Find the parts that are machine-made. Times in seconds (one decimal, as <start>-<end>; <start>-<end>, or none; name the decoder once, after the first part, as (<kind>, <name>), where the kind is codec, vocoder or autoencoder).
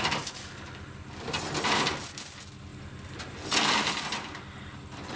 none